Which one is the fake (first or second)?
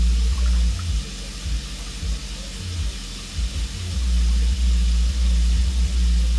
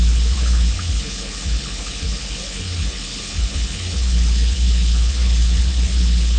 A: second